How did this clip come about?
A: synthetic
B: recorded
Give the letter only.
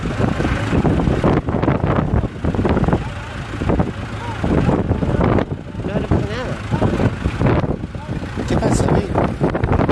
B